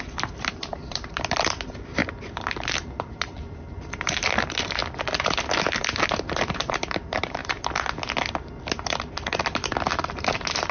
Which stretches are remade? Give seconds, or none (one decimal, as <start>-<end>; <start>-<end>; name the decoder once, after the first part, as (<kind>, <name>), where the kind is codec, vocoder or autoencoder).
0.0-4.8 (vocoder, BigVGAN v2); 6.2-7.4; 8.6-10.7